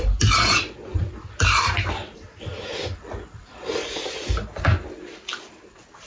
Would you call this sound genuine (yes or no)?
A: yes